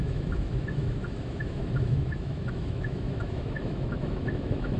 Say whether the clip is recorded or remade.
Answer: remade